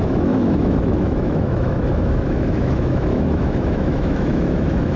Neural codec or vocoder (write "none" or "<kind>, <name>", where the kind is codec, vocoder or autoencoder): autoencoder, DAC-VAE